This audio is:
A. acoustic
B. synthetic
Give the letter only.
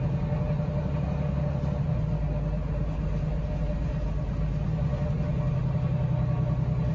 A